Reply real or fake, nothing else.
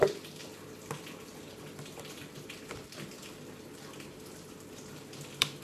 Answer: fake